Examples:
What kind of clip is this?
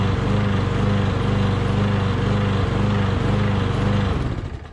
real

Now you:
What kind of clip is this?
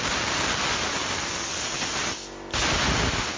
real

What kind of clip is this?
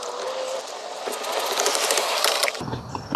real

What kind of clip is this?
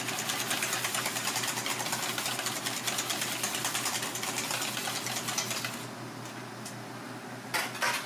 real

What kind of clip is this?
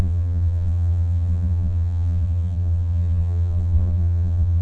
fake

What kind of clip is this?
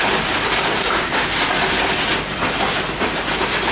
real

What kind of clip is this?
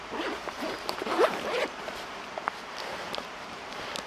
fake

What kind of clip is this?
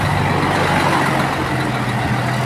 real